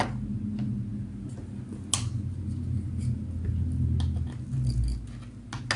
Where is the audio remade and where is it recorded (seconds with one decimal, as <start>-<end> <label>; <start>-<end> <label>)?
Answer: 0.0-5.8 recorded